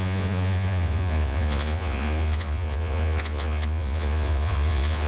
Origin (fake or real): fake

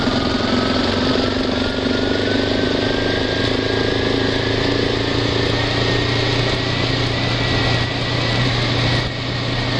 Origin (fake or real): real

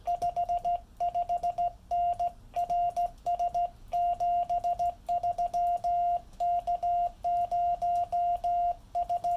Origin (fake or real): real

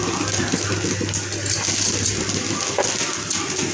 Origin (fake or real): real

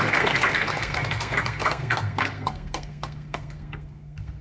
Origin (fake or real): fake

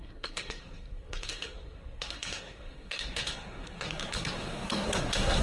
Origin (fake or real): fake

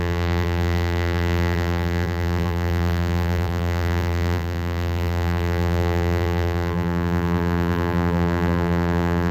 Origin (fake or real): fake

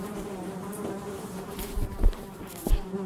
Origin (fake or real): fake